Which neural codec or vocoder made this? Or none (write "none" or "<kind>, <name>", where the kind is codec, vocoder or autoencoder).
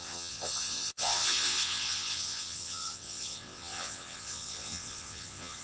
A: vocoder, WaveNeXt